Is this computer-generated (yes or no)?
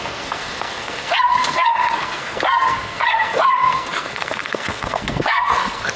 yes